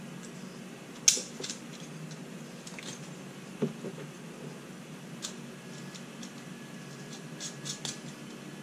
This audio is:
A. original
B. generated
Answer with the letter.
A